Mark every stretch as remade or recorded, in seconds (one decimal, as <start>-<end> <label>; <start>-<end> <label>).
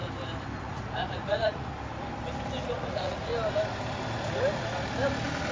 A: 0.0-0.6 recorded; 0.6-1.7 remade; 1.7-2.6 recorded; 2.6-3.3 remade; 3.3-5.5 recorded